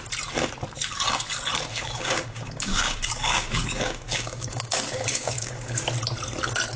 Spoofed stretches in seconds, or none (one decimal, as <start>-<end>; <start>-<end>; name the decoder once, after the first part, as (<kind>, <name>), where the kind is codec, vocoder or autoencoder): 1.7-5.8 (codec, DAC)